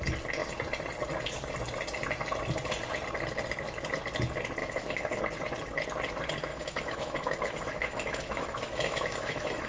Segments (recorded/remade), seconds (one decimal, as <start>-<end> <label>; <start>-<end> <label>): 0.0-4.6 recorded; 4.6-5.2 remade; 5.2-6.5 recorded; 6.5-9.7 remade